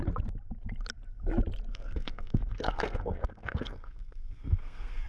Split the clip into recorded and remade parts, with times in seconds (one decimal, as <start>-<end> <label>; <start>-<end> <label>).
0.0-1.7 recorded; 1.7-5.1 remade

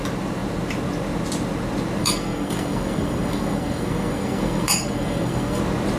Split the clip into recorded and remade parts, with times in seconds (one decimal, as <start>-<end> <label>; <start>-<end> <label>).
0.0-2.0 recorded; 2.0-5.6 remade; 5.6-6.0 recorded

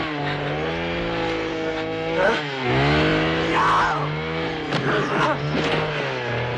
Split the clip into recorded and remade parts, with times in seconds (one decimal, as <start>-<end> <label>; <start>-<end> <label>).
0.0-1.5 recorded; 1.5-2.7 remade; 2.7-6.6 recorded

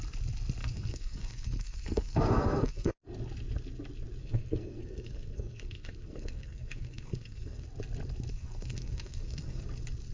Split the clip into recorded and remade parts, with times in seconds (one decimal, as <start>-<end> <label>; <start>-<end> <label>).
0.0-0.6 recorded; 0.6-2.9 remade; 2.9-4.2 recorded; 4.2-7.6 remade; 7.6-8.3 recorded; 8.3-9.6 remade; 9.6-10.1 recorded